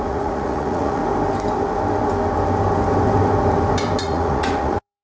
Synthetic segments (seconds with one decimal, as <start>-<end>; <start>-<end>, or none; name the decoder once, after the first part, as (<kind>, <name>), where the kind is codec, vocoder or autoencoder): 0.0-1.0 (vocoder, Vocos); 4.0-5.0